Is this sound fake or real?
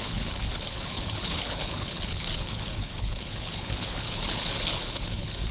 fake